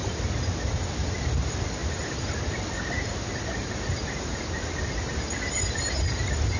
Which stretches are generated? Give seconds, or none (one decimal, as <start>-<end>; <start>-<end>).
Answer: none